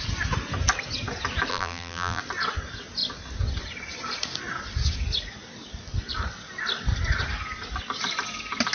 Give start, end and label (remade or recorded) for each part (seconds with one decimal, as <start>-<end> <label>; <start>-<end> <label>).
0.0-1.5 recorded; 1.5-2.2 remade; 2.2-8.7 recorded